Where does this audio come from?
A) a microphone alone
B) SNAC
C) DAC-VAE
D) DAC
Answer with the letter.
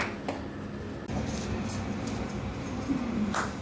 A